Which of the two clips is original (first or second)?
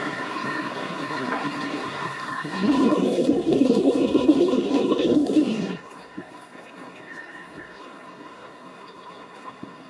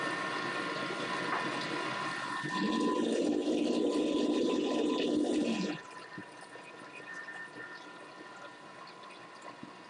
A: second